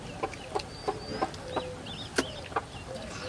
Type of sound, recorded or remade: recorded